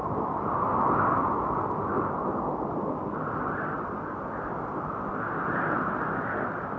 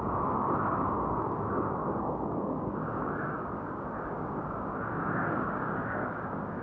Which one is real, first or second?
first